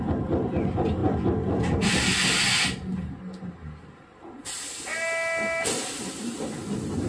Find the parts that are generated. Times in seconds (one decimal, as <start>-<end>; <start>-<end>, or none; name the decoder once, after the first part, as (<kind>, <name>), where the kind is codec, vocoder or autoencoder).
none